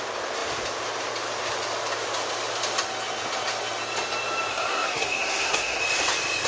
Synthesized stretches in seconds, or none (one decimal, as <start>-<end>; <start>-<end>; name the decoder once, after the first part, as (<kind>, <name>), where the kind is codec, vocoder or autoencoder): 4.5-5.8 (codec, SNAC)

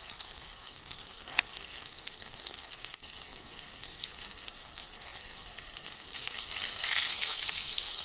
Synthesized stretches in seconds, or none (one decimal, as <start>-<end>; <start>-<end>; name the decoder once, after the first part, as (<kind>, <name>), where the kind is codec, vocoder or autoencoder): 0.0-8.0 (codec, SNAC)

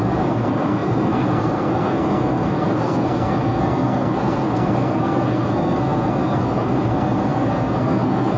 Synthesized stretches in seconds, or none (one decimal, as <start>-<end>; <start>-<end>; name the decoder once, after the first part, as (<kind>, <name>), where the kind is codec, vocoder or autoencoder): 0.0-8.4 (codec, SNAC)

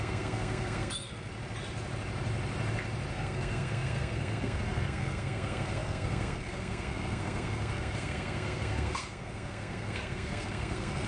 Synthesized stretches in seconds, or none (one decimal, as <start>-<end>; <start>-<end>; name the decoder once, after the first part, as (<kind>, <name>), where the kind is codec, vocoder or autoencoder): 0.0-1.3 (codec, SNAC); 3.1-11.1